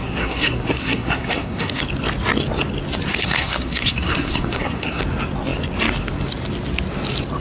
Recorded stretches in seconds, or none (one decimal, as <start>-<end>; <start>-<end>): 1.8-3.1; 5.0-7.4